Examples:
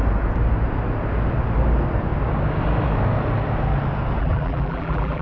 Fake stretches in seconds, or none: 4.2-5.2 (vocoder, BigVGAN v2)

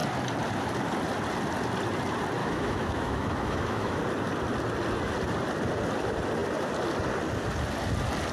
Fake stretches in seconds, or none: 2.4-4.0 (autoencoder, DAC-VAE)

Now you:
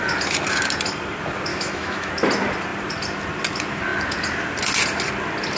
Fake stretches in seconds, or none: 1.5-2.1 (autoencoder, DAC-VAE)

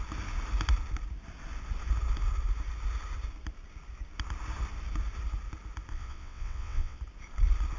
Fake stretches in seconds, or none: 5.9-7.0 (vocoder, WaveNeXt)